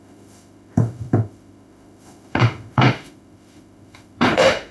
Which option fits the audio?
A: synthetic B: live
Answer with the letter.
A